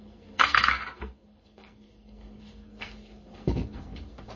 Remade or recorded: remade